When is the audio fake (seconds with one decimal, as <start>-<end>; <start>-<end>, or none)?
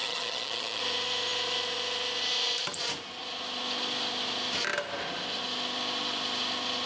0.0-0.8